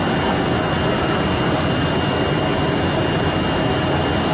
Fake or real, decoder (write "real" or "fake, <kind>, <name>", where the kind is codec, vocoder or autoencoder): real